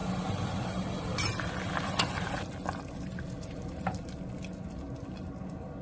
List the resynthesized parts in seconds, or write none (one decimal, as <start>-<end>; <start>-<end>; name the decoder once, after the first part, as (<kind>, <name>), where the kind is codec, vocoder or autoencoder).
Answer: none